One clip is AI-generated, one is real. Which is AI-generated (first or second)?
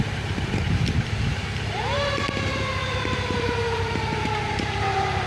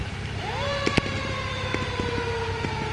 first